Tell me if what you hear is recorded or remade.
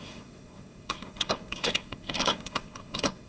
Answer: remade